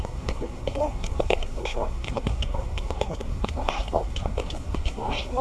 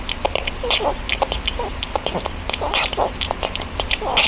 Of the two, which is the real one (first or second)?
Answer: second